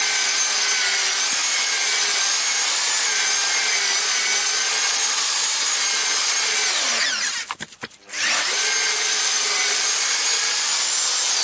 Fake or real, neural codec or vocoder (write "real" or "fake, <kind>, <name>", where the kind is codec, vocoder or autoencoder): real